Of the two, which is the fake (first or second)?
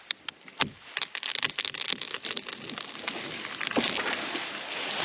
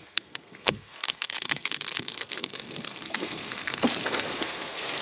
second